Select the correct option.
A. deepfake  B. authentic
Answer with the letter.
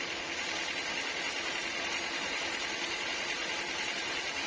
B